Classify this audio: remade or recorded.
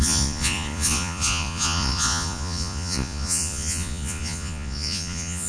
remade